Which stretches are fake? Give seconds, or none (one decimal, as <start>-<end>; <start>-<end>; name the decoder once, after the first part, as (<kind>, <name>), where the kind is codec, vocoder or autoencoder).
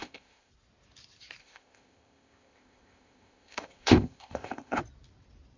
0.0-0.5 (codec, ZipCodec); 1.4-4.8